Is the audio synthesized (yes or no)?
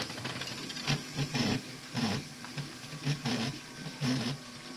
yes